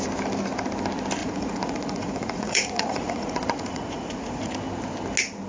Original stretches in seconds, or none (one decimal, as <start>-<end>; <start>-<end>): 0.0-1.2; 4.5-5.5